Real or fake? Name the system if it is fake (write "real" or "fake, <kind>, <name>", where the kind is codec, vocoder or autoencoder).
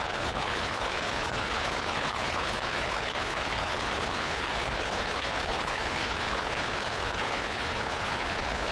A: fake, codec, HILCodec